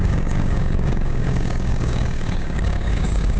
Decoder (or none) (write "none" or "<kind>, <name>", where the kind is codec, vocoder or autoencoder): codec, DAC